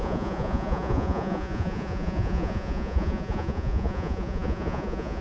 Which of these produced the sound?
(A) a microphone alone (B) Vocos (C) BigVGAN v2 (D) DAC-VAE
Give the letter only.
B